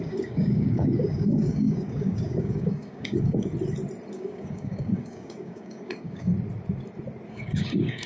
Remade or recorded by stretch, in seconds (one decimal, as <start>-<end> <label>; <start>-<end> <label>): 0.0-3.5 remade; 3.5-4.1 recorded; 4.1-6.3 remade; 6.3-7.3 recorded; 7.3-8.1 remade